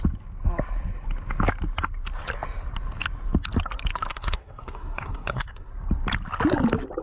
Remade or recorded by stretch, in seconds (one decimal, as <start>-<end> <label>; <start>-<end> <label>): 0.0-4.1 recorded; 4.1-5.7 remade; 5.7-7.0 recorded